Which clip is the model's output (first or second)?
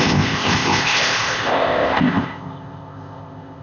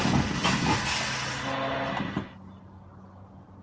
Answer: first